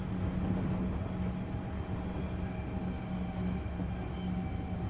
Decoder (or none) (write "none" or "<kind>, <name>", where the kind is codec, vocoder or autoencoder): none